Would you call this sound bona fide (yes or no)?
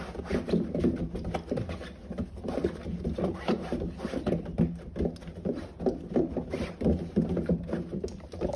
yes